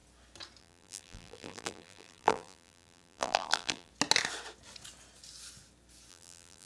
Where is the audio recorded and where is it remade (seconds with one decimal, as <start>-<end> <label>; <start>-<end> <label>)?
0.0-0.6 recorded; 0.6-3.9 remade; 3.9-6.1 recorded; 6.1-6.7 remade